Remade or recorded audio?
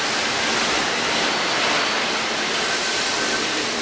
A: remade